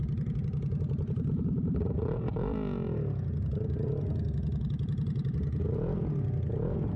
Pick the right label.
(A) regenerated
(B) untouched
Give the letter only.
B